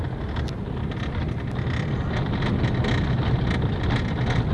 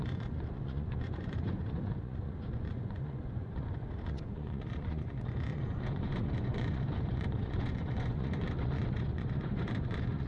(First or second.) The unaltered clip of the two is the first